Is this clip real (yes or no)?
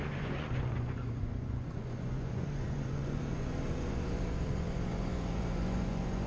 no